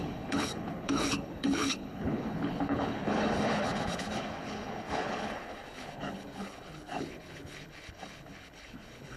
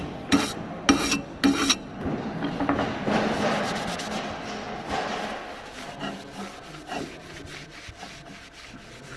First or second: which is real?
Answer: second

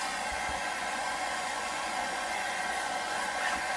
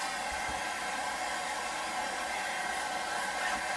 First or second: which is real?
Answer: second